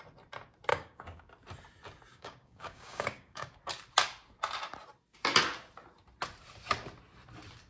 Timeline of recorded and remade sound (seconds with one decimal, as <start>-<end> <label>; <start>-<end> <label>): 0.0-0.7 recorded; 0.7-1.3 remade; 1.3-2.1 recorded; 2.1-3.5 remade; 3.5-7.7 recorded